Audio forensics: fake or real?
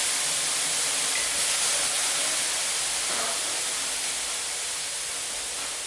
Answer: real